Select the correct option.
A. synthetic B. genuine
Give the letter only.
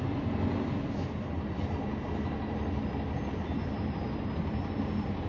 B